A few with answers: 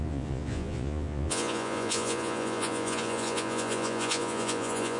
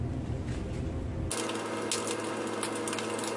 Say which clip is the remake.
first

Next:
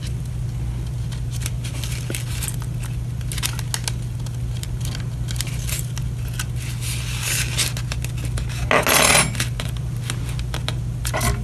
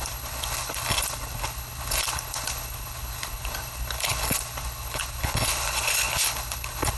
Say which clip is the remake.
second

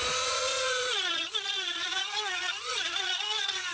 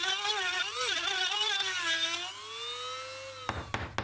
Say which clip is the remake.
first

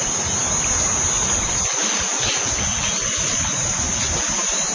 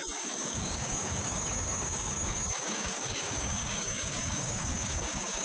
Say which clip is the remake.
second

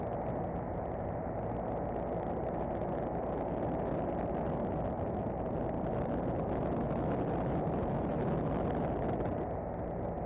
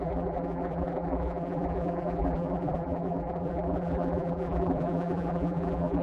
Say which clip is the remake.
second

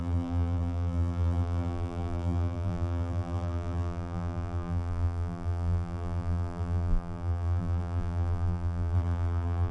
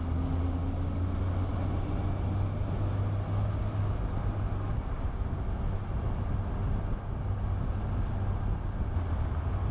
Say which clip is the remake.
first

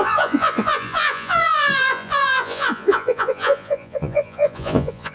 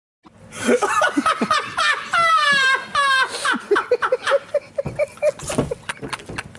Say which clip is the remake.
first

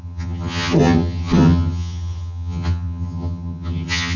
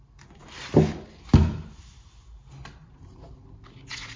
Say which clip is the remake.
first